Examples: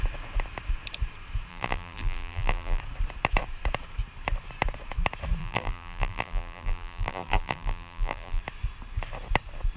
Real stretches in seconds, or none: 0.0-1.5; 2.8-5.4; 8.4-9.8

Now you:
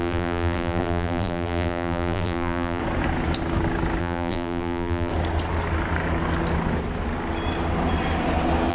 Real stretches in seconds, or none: 2.8-4.0; 5.1-8.7

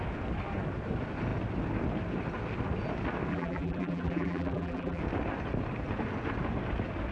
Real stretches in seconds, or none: 0.0-3.3; 5.0-7.1

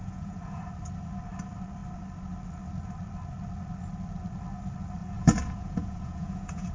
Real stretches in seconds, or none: 0.6-5.0

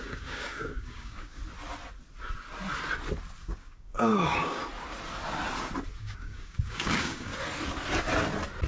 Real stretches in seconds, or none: 1.4-3.4; 4.6-6.0; 7.3-8.7

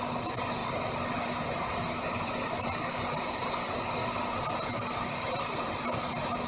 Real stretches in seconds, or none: 0.0-4.0; 5.7-6.5

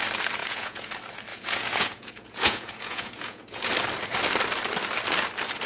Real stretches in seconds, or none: 0.0-0.4; 0.9-1.3; 3.7-5.7